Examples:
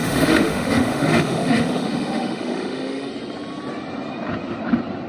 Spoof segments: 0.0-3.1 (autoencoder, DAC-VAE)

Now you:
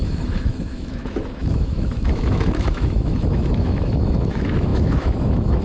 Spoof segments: 0.0-5.6 (autoencoder, DAC-VAE)

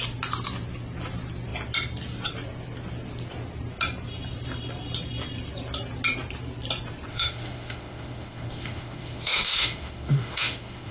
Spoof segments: 7.1-10.9 (autoencoder, DAC-VAE)

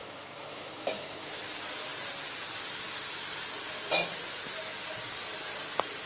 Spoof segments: 0.0-1.4 (autoencoder, DAC-VAE)